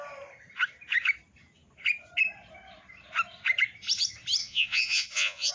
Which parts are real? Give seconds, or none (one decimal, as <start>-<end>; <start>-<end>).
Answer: 0.0-4.4